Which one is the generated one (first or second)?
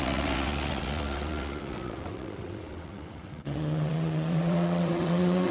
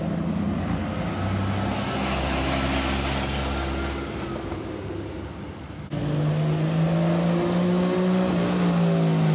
first